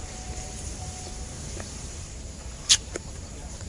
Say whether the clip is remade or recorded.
remade